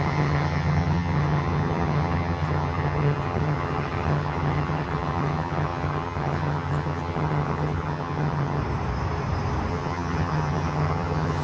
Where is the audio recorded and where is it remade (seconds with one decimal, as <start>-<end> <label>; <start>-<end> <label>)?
0.0-8.6 remade; 8.6-9.7 recorded; 9.7-11.4 remade